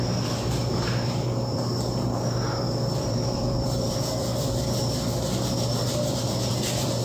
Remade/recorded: remade